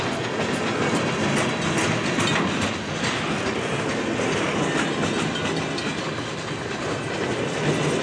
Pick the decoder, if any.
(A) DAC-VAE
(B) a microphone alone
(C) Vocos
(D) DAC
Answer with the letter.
B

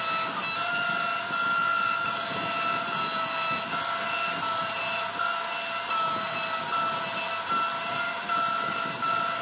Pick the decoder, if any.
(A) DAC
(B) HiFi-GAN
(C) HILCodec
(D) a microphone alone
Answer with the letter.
D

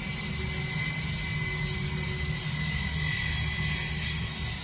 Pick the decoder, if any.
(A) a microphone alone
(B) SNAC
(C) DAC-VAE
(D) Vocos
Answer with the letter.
A